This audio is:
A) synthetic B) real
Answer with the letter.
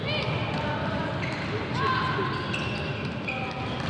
B